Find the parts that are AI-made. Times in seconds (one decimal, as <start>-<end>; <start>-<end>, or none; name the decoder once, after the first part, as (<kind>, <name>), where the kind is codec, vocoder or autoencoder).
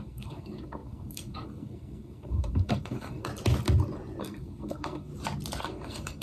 0.0-3.3 (codec, SNAC); 4.2-5.1; 5.6-6.2